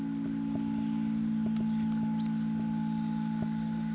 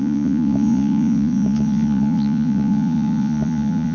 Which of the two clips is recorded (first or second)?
first